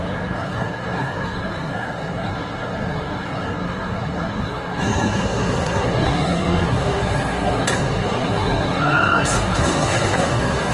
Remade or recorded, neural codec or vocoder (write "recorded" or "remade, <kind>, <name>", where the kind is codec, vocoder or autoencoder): remade, codec, SNAC